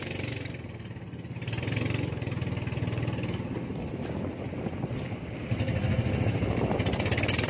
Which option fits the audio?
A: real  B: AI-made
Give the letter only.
A